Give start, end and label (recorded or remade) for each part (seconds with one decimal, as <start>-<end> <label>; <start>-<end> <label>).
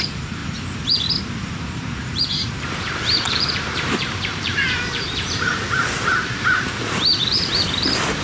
0.0-0.4 remade; 0.4-1.5 recorded; 1.5-8.2 remade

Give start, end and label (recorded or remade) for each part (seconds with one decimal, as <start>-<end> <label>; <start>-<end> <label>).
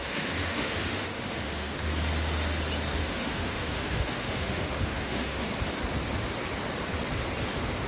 0.0-1.9 remade; 1.9-3.0 recorded; 3.0-5.5 remade; 5.5-7.9 recorded